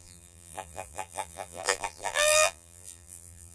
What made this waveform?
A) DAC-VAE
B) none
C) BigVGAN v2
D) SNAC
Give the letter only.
C